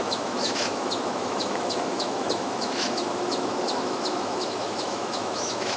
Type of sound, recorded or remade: remade